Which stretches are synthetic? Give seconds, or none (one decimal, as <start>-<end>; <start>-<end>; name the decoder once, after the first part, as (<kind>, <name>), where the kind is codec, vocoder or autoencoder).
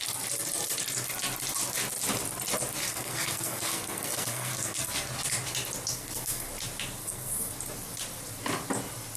2.9-5.1 (codec, SNAC); 5.9-6.5; 7.0-7.5